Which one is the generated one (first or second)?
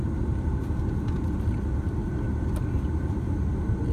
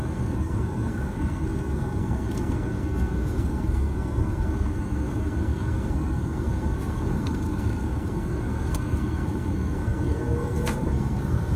second